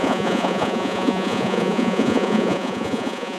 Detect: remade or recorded remade